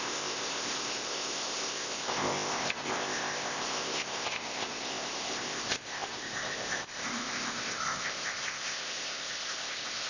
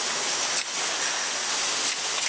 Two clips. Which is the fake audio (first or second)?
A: first